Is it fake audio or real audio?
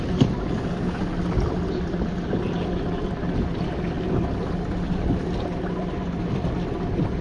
real